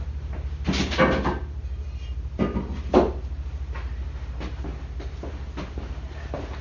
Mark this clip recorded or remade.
recorded